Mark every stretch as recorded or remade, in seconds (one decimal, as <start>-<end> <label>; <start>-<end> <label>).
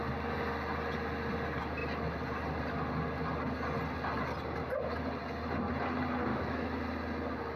0.0-6.3 recorded; 6.3-6.8 remade; 6.8-7.6 recorded